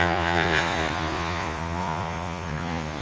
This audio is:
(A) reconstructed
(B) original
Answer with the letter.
A